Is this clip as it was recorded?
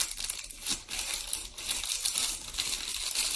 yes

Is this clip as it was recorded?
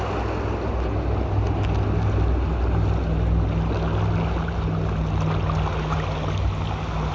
yes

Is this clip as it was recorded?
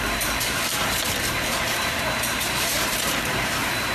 no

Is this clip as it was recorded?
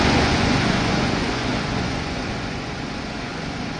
no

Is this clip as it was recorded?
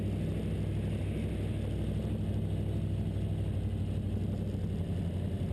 yes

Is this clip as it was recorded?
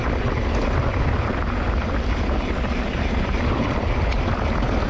yes